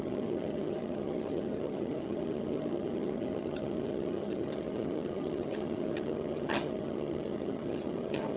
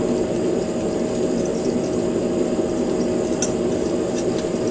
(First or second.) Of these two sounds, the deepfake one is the first